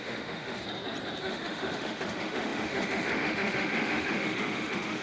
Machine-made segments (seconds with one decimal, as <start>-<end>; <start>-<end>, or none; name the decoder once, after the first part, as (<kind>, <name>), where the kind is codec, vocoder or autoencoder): 0.0-0.6 (autoencoder, DAC-VAE); 1.2-5.0